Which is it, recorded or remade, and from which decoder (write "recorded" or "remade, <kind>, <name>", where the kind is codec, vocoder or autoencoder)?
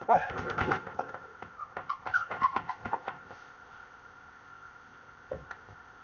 remade, codec, ZipCodec